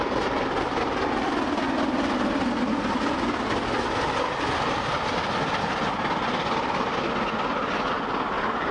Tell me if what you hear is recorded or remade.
recorded